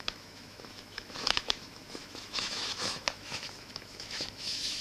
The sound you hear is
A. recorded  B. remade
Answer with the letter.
B